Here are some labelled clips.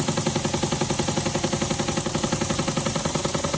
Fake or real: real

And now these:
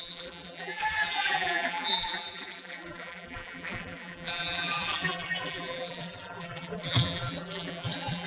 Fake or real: fake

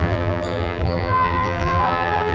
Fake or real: fake